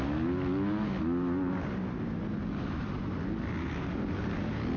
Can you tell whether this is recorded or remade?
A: recorded